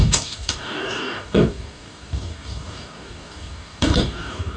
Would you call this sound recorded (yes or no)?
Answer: no